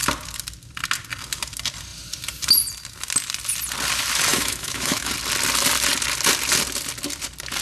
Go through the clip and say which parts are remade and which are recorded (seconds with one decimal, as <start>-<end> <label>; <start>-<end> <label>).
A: 0.0-4.3 recorded; 4.3-5.1 remade; 5.1-7.6 recorded